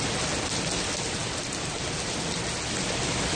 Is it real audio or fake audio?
real